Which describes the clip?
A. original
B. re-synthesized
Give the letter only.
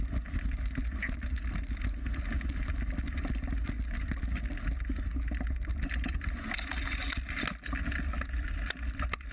A